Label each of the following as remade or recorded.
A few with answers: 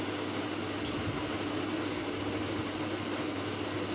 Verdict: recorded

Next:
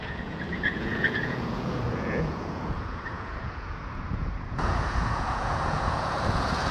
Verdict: remade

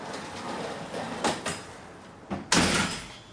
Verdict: recorded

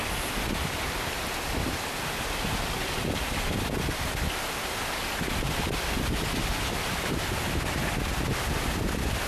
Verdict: recorded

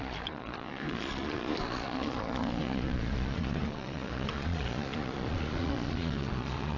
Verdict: remade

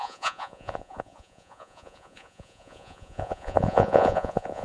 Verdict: remade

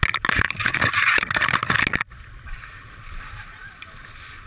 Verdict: recorded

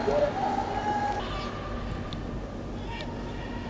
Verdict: recorded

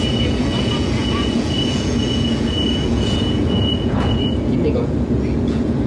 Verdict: remade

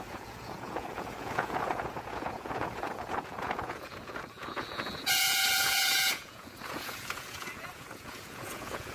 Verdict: remade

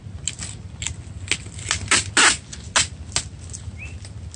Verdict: recorded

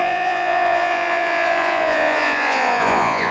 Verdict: remade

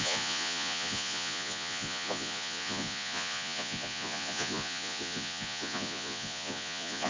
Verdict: remade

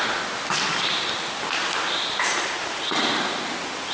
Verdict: recorded